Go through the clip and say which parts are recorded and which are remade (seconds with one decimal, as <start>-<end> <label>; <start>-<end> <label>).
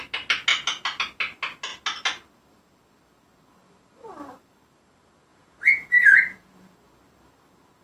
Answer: 0.0-5.3 recorded; 5.3-6.7 remade; 6.7-7.8 recorded